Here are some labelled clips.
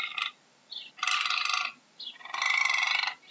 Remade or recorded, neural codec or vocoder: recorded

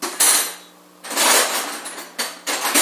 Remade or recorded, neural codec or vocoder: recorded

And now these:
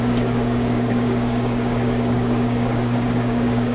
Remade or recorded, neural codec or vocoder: remade, codec, DAC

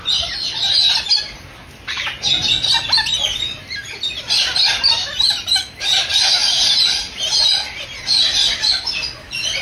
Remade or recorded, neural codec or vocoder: recorded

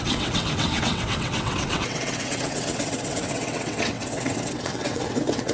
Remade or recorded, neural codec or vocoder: remade, vocoder, WaveNeXt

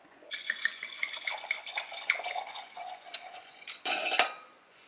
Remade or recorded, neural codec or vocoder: remade, vocoder, Vocos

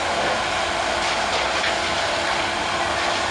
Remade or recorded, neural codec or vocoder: recorded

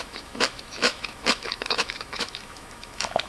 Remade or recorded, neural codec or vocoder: remade, autoencoder, DAC-VAE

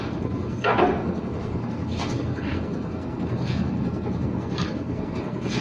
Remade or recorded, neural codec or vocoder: remade, codec, SNAC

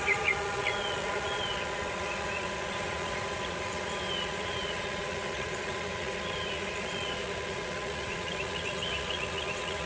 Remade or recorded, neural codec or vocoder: remade, vocoder, Vocos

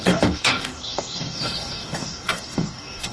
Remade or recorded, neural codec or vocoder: remade, codec, DAC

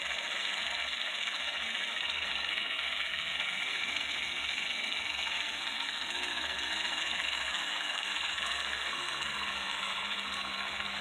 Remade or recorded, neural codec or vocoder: remade, codec, SNAC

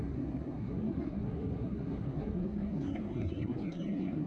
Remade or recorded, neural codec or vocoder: remade, codec, SNAC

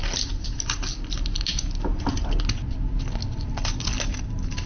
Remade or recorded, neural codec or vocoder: recorded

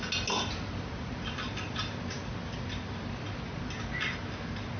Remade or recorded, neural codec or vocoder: recorded